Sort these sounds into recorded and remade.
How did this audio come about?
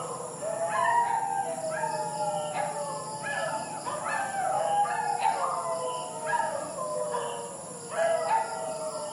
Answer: recorded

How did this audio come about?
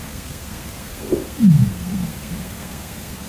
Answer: remade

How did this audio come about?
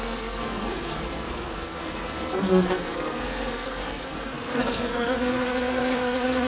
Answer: remade